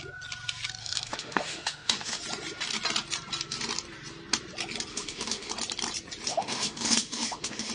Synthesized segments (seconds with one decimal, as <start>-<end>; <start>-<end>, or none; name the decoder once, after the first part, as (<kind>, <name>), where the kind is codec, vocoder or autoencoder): 0.8-2.2 (autoencoder, DAC-VAE); 4.9-5.5; 6.3-7.7